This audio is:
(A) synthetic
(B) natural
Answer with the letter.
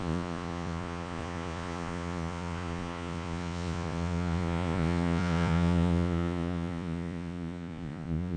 A